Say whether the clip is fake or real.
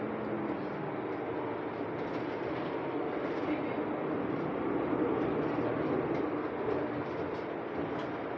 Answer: real